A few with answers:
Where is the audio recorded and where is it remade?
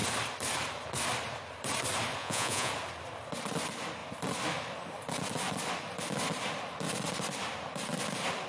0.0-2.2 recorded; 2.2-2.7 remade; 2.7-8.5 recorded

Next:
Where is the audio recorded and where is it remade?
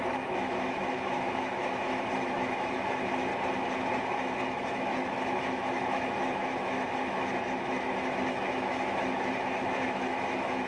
0.0-3.3 remade; 3.3-4.0 recorded; 4.0-10.7 remade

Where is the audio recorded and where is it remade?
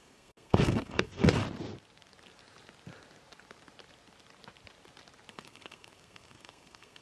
0.0-1.4 remade; 1.4-5.3 recorded; 5.3-7.0 remade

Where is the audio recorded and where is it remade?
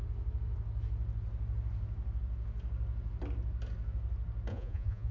0.0-4.5 recorded; 4.5-5.1 remade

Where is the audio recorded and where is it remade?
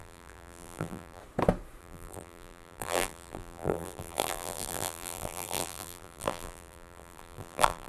0.0-1.2 remade; 1.2-1.8 recorded; 1.8-7.9 remade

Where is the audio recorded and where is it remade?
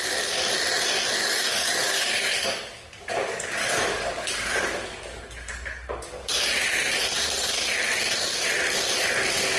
0.0-1.2 recorded; 1.2-6.3 remade; 6.3-9.6 recorded